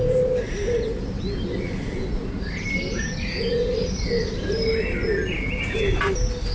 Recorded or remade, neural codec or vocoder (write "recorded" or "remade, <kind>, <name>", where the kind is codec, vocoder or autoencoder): recorded